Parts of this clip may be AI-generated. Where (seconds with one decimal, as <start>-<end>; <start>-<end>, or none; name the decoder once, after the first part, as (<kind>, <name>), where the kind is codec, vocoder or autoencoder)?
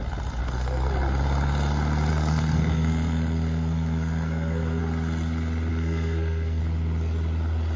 0.4-0.9 (codec, SNAC); 2.1-4.8; 5.7-6.6